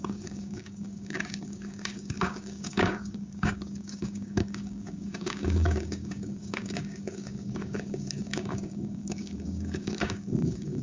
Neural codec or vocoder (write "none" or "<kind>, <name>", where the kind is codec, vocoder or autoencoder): codec, DAC